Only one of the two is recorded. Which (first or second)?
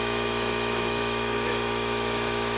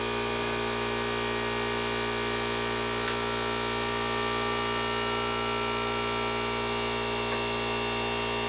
second